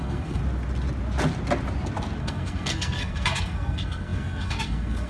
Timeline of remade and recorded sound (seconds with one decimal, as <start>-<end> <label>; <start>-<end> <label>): 0.0-0.4 remade; 0.4-2.2 recorded; 2.2-5.1 remade